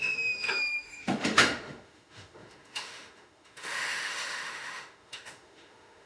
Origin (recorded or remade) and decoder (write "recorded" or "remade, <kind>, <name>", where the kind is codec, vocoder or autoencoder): remade, autoencoder, DAC-VAE